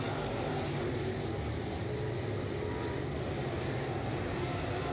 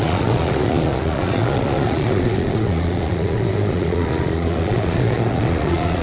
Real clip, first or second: first